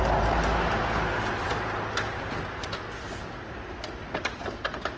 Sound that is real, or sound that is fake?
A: real